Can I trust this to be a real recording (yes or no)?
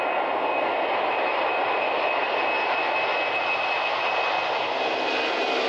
yes